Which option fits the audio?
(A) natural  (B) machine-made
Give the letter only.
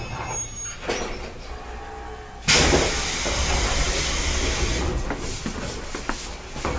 A